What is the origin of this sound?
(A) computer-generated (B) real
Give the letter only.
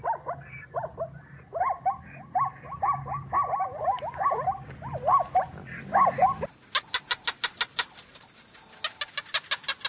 B